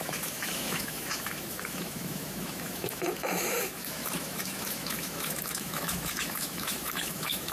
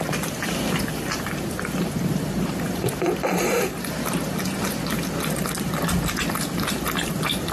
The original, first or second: second